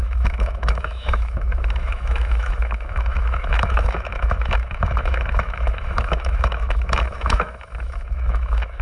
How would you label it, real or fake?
fake